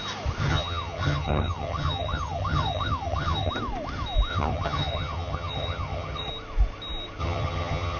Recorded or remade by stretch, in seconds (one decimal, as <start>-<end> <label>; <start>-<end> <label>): 0.0-0.5 recorded; 0.5-3.5 remade; 3.5-4.3 recorded; 4.3-6.3 remade; 6.3-7.2 recorded; 7.2-8.0 remade